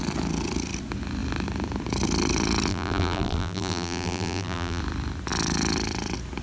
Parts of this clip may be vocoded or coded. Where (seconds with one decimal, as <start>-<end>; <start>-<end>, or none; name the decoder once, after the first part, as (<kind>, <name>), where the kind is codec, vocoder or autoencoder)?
2.7-4.8 (vocoder, BigVGAN v2)